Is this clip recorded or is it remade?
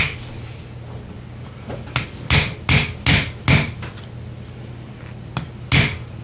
recorded